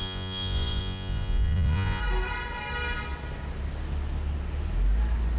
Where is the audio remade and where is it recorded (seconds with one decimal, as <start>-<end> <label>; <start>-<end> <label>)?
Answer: 0.0-2.0 remade; 2.0-5.4 recorded